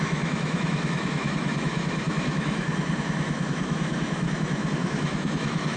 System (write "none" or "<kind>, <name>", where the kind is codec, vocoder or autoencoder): autoencoder, DAC-VAE